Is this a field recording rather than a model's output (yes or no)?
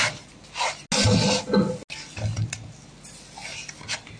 yes